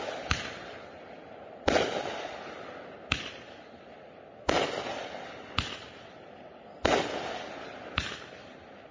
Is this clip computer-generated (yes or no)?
no